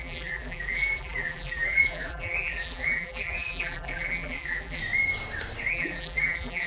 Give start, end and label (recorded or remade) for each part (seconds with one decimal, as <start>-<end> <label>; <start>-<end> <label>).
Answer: 0.0-4.8 remade; 4.8-5.7 recorded; 5.7-6.7 remade